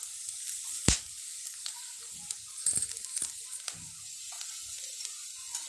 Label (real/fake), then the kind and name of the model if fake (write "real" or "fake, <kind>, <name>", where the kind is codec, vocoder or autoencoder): real